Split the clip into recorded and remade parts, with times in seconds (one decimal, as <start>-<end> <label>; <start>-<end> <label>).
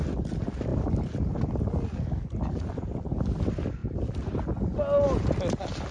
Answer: 0.0-5.9 recorded